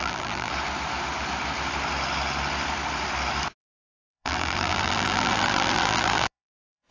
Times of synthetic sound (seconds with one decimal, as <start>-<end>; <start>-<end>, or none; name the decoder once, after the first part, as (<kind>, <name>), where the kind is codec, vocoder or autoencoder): 0.0-0.5 (vocoder, BigVGAN v2); 3.6-6.9